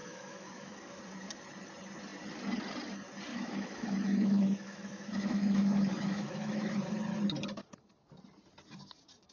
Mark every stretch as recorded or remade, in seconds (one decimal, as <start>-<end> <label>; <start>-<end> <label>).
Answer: 0.0-1.0 remade; 1.0-3.3 recorded; 3.3-6.7 remade; 6.7-9.3 recorded